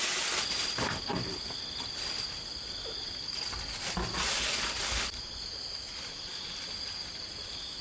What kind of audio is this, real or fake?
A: real